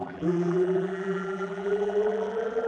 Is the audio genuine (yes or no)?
no